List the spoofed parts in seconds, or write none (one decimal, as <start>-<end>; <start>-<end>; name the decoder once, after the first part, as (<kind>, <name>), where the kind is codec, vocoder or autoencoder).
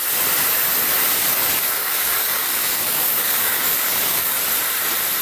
1.3-4.4 (codec, DAC)